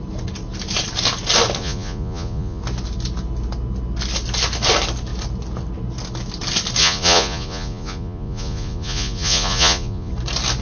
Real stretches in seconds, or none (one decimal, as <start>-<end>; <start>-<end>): 0.0-1.6; 2.6-6.8; 10.1-10.6